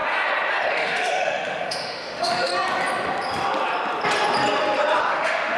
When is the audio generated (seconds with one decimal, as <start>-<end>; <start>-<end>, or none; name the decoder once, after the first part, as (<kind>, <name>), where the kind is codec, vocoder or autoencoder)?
0.7-2.5 (autoencoder, DAC-VAE); 5.1-5.6